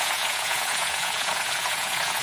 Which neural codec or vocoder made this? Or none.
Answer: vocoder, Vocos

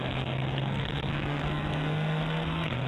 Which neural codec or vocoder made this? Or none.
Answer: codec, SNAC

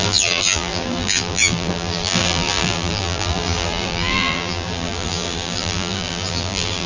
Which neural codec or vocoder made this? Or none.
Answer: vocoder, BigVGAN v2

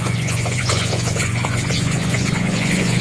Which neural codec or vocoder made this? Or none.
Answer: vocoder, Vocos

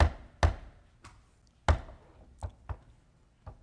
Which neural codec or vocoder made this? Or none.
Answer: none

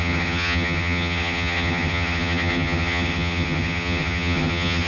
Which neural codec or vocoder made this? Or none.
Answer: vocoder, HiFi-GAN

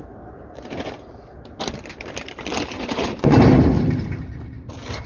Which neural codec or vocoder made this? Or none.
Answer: none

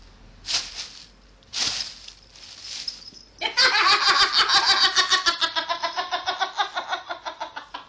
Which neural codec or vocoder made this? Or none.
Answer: none